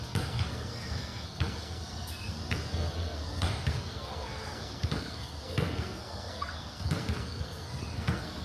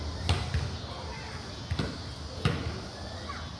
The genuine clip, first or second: second